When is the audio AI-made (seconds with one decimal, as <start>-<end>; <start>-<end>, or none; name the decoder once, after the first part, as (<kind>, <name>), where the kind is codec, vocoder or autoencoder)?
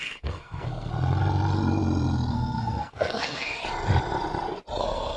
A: 0.0-0.9 (codec, SNAC); 2.3-3.6; 4.8-5.2